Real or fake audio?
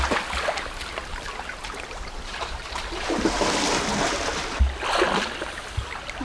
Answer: real